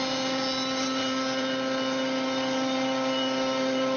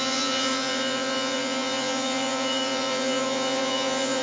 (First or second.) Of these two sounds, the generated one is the second